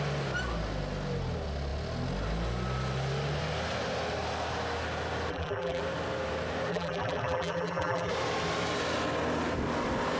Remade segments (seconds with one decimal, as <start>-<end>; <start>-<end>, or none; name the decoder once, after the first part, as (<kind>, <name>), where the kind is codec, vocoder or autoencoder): 5.3-5.8 (vocoder, BigVGAN v2); 6.7-8.1